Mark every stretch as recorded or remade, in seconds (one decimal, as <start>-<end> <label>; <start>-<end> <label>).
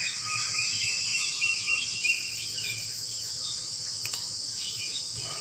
0.0-5.4 remade